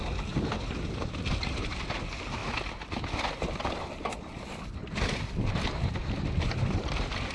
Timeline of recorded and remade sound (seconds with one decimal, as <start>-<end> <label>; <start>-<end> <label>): 0.0-6.0 recorded; 6.0-7.3 remade